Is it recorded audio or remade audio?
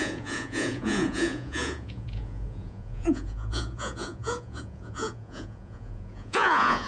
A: remade